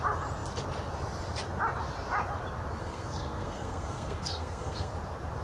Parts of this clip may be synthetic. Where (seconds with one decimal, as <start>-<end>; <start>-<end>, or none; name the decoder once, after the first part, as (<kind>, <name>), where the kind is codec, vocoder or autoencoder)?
2.8-4.9 (codec, SNAC)